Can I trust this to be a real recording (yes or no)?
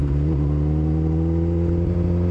yes